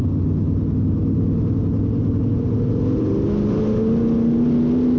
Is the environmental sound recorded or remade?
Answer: recorded